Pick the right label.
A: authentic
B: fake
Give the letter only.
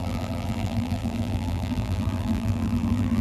B